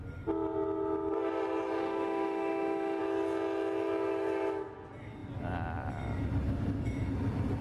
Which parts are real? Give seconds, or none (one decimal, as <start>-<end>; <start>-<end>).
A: 0.0-1.8; 3.0-7.6